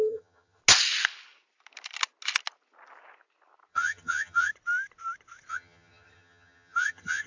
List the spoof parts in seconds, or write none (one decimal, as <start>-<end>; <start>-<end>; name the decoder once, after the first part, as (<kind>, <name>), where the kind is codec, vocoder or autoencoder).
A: 0.0-0.6 (vocoder, HiFi-GAN); 3.7-4.5; 5.5-7.3